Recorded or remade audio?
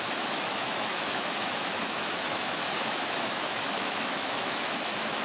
remade